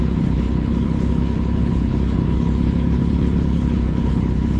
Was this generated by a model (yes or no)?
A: yes